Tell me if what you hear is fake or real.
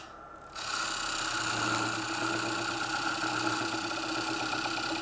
real